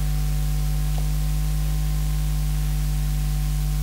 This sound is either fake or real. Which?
real